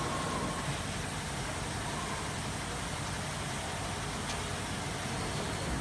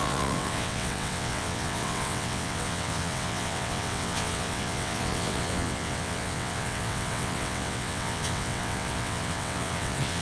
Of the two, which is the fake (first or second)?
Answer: second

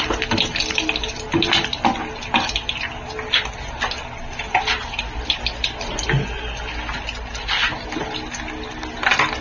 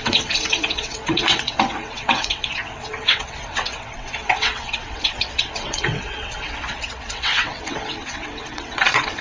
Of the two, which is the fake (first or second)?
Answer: second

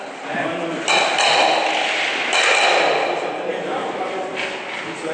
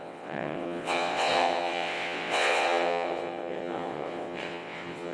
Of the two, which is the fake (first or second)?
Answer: second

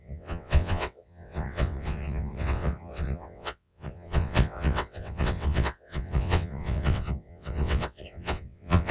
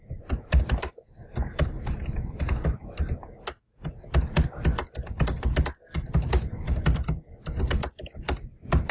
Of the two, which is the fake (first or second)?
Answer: first